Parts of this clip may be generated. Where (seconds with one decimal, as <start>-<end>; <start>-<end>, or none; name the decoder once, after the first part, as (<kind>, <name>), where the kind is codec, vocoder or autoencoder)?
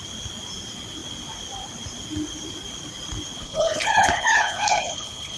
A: 3.4-5.4 (codec, HILCodec)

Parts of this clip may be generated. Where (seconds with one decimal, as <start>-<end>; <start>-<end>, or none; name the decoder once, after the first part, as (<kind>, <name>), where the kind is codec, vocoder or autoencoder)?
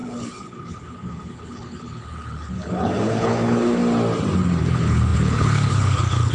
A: 0.0-3.8 (codec, HILCodec); 4.6-6.3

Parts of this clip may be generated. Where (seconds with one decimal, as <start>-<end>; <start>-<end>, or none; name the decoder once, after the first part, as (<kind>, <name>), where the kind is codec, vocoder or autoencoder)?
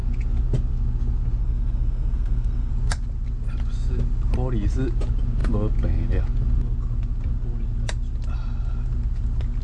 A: 1.4-2.7 (codec, SNAC)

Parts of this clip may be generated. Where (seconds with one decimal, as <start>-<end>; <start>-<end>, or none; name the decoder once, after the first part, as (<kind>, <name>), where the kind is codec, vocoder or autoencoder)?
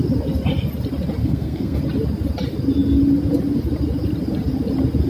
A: 1.2-1.8 (codec, SNAC)